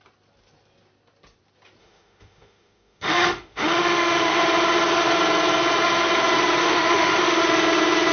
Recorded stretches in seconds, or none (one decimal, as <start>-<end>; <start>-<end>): 0.0-1.8; 4.4-6.6; 7.4-8.1